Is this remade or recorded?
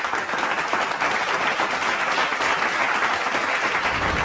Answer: recorded